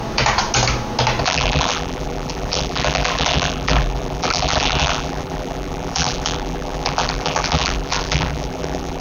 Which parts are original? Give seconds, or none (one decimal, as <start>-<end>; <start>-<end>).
0.0-1.2